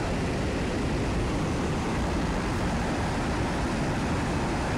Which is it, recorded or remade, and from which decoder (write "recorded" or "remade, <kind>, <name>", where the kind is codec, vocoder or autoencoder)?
remade, vocoder, BigVGAN v2